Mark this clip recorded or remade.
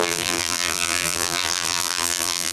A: remade